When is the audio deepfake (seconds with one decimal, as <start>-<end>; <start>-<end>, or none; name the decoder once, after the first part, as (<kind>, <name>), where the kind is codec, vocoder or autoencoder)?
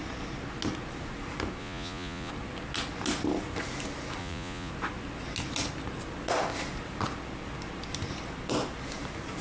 1.6-2.3 (vocoder, Vocos); 4.2-4.7